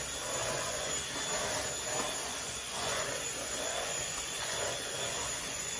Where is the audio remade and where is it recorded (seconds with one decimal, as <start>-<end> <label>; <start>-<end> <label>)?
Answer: 0.0-0.4 recorded; 0.4-0.9 remade; 0.9-2.2 recorded; 2.2-5.8 remade